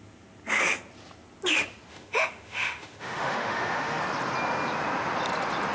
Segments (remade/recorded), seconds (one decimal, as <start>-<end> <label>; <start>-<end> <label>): 0.0-1.9 recorded; 1.9-4.0 remade; 4.0-5.7 recorded